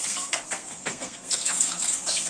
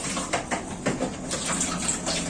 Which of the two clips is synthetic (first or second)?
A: first